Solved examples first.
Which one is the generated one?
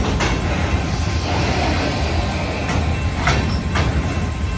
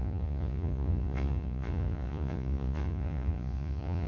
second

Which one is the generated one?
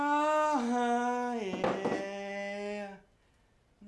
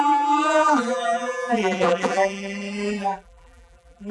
second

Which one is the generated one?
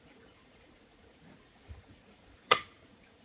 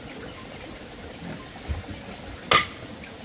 first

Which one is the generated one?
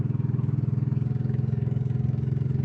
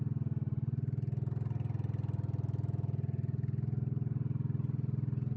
first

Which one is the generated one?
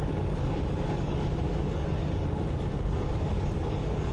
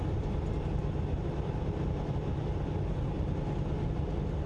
first